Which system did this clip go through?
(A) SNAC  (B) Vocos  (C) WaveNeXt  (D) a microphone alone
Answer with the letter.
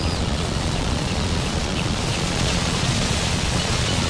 B